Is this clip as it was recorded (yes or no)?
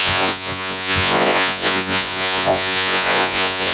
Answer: no